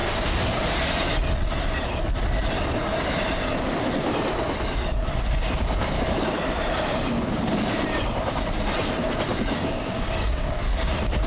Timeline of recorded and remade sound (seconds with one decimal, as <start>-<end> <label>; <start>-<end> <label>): 0.0-9.6 recorded; 9.6-10.5 remade; 10.5-11.3 recorded